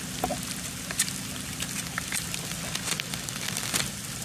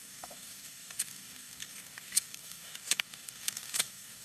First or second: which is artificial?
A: second